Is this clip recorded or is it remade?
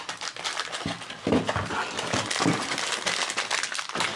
recorded